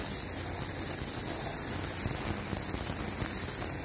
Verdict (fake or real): real